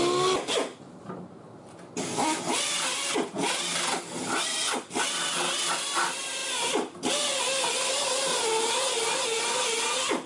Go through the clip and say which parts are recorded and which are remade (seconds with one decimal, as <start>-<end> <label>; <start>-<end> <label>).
0.0-10.3 recorded